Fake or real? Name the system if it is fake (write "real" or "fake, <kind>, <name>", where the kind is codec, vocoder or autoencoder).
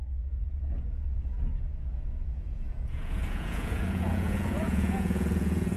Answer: fake, vocoder, Vocos